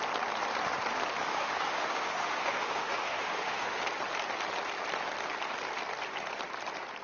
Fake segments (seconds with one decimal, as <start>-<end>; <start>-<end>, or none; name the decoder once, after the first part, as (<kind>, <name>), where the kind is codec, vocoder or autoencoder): 1.3-3.8 (autoencoder, DAC-VAE)